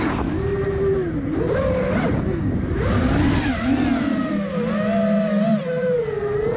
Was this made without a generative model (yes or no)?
yes